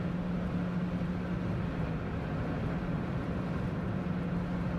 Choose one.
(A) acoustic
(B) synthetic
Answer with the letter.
A